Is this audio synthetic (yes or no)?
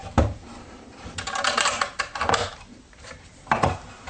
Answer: yes